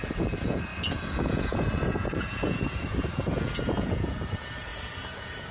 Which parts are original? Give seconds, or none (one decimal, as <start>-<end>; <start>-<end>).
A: none